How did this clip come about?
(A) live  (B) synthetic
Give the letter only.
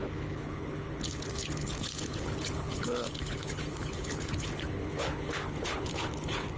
B